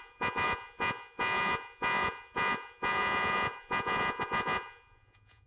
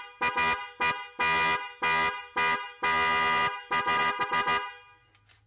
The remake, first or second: first